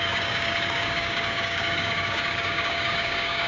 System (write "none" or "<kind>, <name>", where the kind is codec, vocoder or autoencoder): codec, DAC